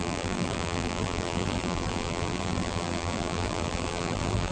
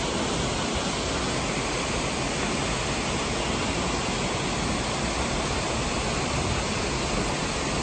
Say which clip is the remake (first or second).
first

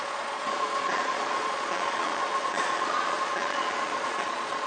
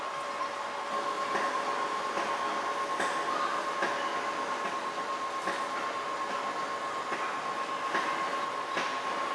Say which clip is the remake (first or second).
first